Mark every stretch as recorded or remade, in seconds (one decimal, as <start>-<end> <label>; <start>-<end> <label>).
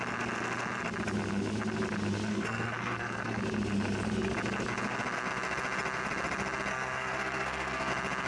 0.0-2.3 recorded; 2.3-3.4 remade; 3.4-6.7 recorded; 6.7-7.9 remade; 7.9-8.3 recorded